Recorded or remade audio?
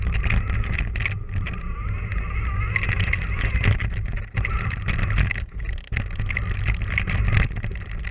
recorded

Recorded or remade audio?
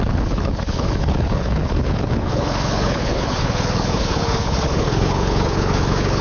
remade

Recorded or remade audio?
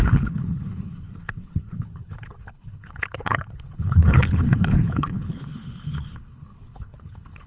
remade